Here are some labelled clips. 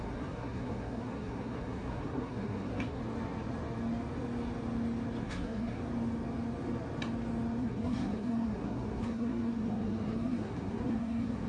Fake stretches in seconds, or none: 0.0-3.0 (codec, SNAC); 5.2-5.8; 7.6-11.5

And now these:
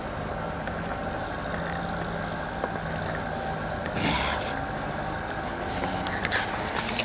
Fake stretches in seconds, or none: none